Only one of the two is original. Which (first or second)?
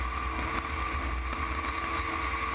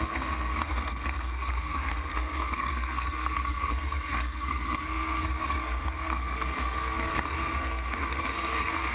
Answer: first